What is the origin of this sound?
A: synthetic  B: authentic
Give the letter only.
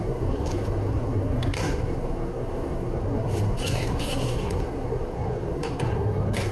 A